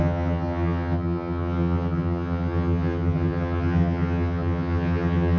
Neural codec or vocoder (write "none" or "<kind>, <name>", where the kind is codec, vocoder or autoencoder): vocoder, HiFi-GAN